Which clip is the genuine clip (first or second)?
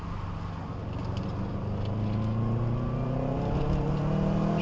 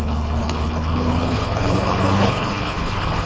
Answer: first